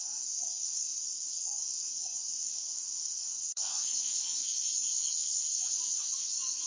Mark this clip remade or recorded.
remade